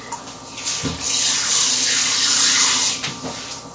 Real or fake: real